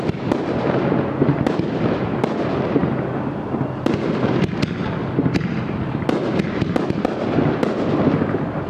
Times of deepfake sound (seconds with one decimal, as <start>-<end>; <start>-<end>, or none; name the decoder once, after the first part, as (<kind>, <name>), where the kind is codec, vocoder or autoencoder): none